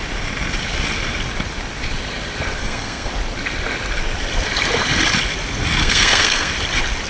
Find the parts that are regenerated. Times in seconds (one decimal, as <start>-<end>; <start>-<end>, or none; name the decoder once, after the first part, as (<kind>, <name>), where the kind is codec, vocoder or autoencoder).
2.6-3.1 (codec, SNAC); 5.8-6.5